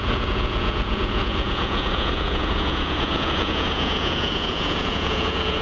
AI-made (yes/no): yes